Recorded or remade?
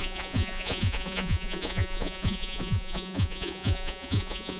remade